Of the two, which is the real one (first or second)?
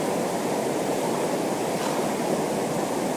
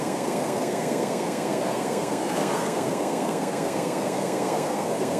first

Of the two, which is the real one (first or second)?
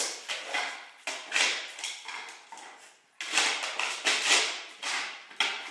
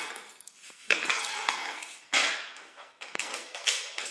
first